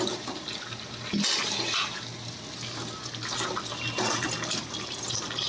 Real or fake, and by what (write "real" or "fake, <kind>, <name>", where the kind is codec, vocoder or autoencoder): real